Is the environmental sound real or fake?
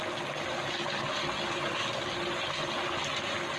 real